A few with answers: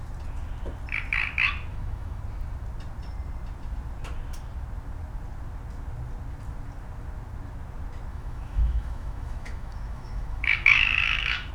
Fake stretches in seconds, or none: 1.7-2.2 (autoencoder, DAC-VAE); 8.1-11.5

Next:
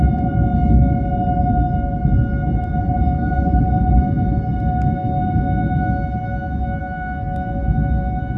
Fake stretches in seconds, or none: none

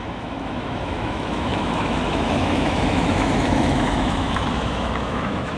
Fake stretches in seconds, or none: 0.0-5.6 (autoencoder, DAC-VAE)

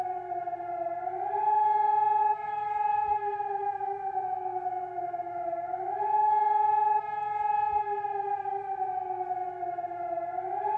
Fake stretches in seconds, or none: 2.2-7.0 (autoencoder, DAC-VAE)